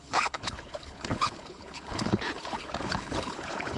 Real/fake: fake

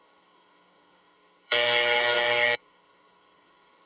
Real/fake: fake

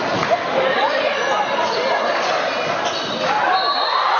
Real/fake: real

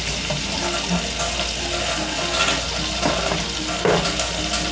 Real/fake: real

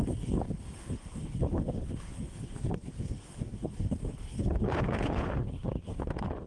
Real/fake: fake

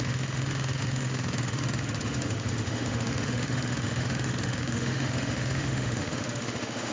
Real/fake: fake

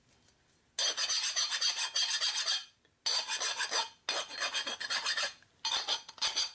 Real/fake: real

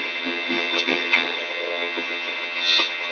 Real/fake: fake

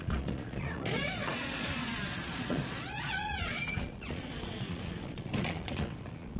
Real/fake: fake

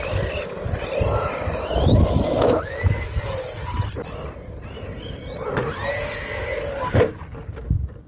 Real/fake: real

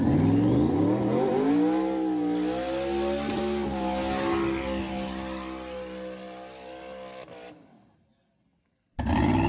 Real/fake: real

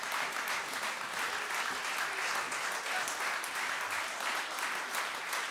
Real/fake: real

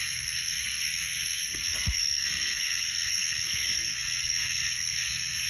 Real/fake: fake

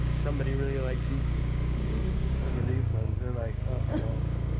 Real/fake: fake